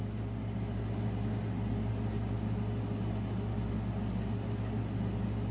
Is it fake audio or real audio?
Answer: real